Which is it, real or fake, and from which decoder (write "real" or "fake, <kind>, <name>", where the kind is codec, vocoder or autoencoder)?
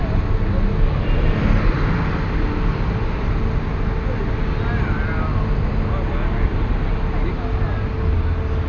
real